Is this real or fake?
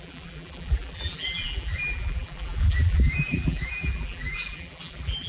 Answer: fake